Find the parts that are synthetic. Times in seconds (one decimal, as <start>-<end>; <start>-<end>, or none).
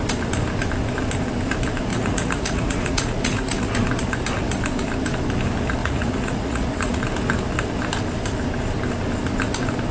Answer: 1.9-3.7; 5.8-7.0